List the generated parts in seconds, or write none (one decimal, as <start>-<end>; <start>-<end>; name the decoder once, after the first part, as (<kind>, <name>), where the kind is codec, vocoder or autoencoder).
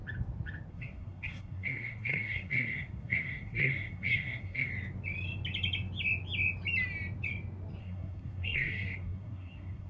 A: 0.7-4.7 (codec, SNAC); 7.8-9.9